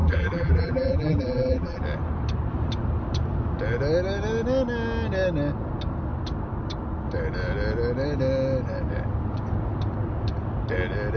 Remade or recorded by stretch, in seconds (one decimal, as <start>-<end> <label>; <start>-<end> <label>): 0.0-1.8 remade; 1.8-11.2 recorded